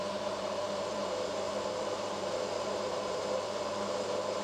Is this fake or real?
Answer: fake